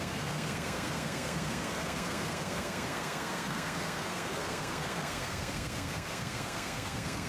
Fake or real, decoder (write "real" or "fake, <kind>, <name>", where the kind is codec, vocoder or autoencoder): fake, codec, SNAC